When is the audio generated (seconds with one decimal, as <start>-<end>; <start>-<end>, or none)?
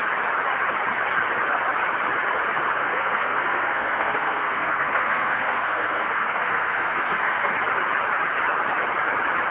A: 2.8-7.5